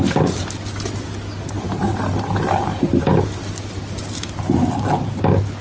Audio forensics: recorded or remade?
recorded